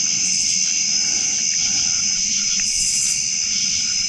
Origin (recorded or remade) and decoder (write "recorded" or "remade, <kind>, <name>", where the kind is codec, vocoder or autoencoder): recorded